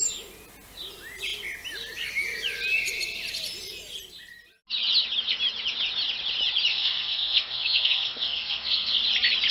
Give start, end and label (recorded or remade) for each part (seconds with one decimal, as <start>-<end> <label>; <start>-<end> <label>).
0.0-6.7 recorded; 6.7-9.0 remade; 9.0-9.5 recorded